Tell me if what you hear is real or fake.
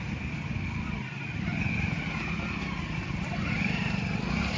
real